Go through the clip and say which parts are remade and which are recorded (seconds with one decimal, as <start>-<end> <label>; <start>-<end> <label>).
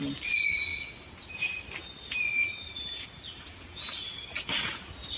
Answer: 0.0-0.7 recorded; 0.7-1.6 remade; 1.6-2.3 recorded; 2.3-4.8 remade; 4.8-5.2 recorded